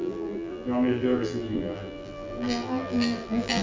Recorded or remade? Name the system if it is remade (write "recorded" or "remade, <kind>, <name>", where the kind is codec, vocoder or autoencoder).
remade, vocoder, BigVGAN v2